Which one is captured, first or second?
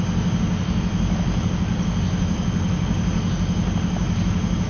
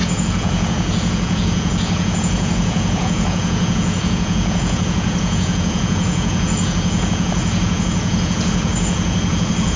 first